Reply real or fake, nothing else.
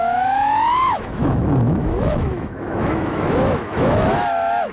fake